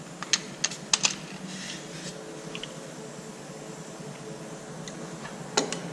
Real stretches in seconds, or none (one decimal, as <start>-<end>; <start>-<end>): 0.0-5.9